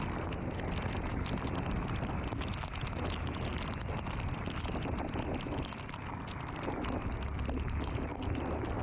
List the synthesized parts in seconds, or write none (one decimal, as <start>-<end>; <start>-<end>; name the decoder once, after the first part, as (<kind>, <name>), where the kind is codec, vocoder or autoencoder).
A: 1.1-2.9 (vocoder, BigVGAN v2); 3.5-5.0; 8.1-8.8